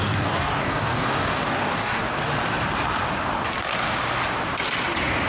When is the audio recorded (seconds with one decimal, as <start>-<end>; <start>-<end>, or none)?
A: 2.0-5.3